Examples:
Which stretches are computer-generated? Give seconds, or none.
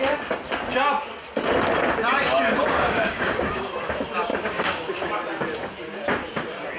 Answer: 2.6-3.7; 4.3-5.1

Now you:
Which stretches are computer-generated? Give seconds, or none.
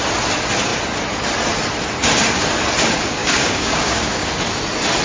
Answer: 3.2-4.3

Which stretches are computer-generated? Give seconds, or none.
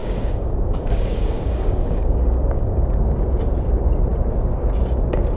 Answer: 0.0-3.2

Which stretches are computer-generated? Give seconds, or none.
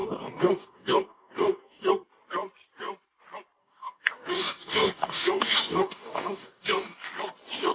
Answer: 0.0-1.9; 3.6-7.1